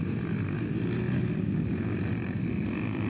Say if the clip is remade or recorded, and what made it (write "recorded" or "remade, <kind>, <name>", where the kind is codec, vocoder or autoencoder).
recorded